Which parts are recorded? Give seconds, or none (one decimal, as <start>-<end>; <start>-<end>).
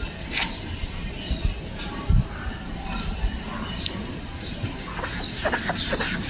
0.0-6.3